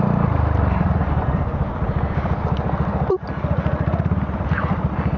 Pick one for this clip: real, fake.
real